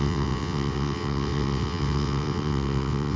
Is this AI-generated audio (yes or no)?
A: yes